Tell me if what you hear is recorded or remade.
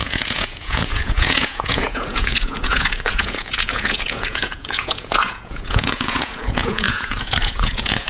remade